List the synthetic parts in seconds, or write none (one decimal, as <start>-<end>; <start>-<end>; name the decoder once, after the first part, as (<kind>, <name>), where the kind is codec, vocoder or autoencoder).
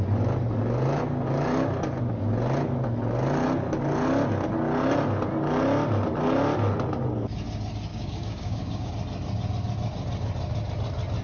7.9-8.9 (codec, DAC)